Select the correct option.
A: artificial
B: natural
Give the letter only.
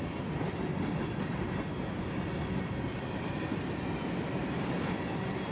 B